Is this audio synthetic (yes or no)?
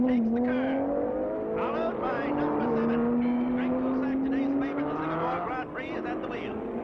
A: no